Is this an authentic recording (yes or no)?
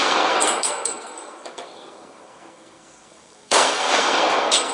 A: no